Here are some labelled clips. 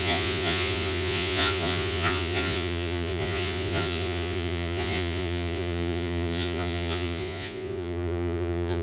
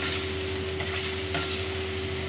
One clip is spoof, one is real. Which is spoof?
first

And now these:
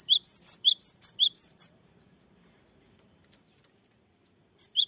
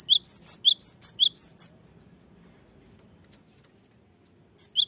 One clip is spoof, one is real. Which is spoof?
first